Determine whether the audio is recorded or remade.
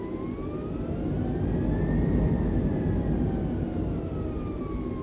recorded